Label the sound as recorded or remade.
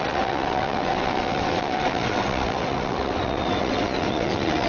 remade